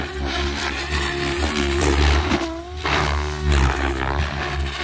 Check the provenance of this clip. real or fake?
real